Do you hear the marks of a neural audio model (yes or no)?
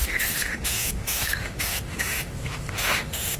yes